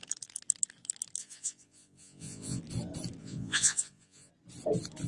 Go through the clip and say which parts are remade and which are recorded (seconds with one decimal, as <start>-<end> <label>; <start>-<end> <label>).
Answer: 0.0-1.2 recorded; 1.2-2.6 remade; 2.6-3.2 recorded; 3.2-4.3 remade; 4.3-5.1 recorded